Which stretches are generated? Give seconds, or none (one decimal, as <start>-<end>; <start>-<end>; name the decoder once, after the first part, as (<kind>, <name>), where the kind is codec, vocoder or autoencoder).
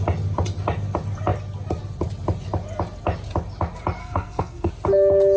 4.0-4.7 (codec, SNAC)